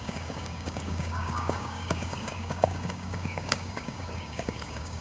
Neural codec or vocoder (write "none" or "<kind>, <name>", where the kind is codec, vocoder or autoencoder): codec, DAC